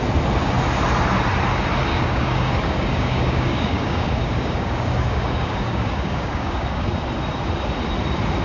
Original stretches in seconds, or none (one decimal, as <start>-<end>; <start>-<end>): 0.0-1.9; 6.9-8.4